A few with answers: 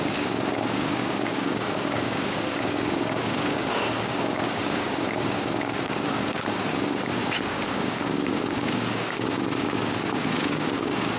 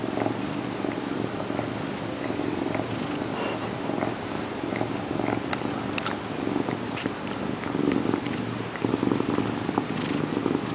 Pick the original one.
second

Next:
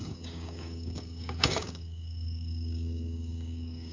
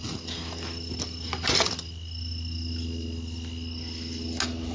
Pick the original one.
second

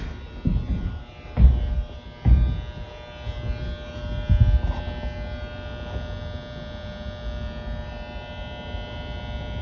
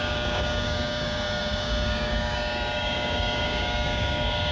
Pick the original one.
first